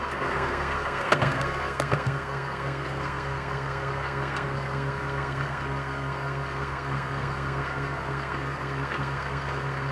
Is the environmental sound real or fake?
fake